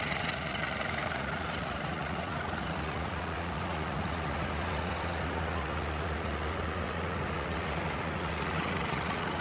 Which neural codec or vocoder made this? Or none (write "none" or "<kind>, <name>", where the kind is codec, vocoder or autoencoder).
vocoder, Vocos